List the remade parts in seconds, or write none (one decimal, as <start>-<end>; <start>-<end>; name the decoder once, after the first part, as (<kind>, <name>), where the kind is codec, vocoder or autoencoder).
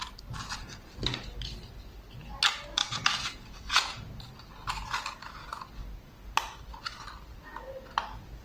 2.8-4.1 (vocoder, Vocos)